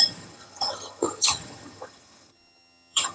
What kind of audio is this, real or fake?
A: fake